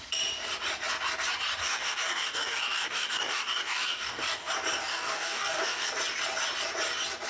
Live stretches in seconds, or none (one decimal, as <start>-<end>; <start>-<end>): 0.0-1.6; 4.5-4.9; 5.9-7.3